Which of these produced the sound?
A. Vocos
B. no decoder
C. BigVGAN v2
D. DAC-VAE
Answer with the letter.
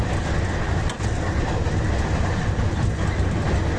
B